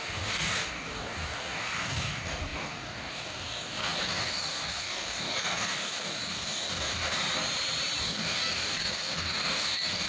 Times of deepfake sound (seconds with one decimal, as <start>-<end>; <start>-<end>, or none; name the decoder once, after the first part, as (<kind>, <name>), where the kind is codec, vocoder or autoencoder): 0.0-7.2 (codec, DAC); 8.0-10.1